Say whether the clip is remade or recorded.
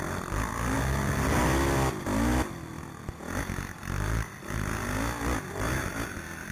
recorded